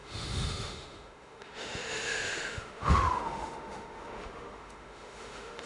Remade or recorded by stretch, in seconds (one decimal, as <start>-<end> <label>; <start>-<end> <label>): 0.0-5.7 remade